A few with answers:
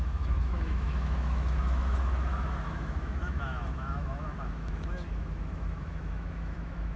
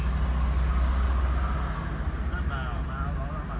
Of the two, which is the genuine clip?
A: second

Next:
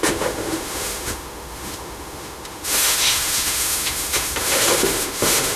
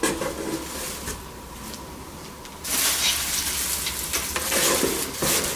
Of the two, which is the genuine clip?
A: second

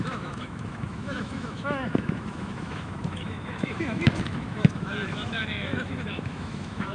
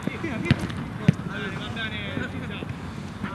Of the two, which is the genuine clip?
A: second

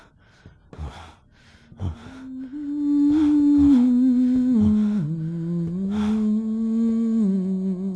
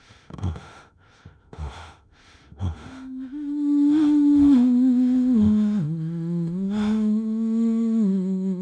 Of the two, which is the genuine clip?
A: first